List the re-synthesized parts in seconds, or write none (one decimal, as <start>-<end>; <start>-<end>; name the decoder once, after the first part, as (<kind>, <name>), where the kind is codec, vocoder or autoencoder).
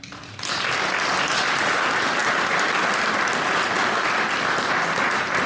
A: none